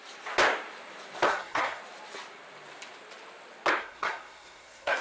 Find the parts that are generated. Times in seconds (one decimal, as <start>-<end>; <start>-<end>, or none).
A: 1.3-1.8; 3.8-5.0